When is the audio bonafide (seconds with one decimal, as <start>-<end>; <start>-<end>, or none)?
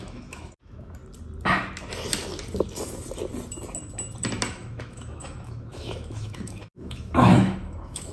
1.0-4.5